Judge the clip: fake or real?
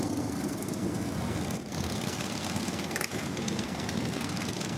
fake